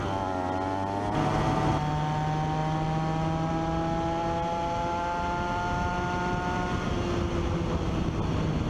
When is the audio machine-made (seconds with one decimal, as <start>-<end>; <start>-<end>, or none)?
none